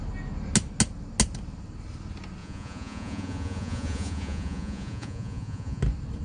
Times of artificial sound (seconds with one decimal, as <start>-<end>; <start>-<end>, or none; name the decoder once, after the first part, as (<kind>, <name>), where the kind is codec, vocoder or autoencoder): 2.4-5.8 (vocoder, Vocos)